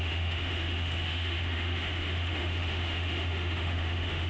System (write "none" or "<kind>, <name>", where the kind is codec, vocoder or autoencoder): autoencoder, DAC-VAE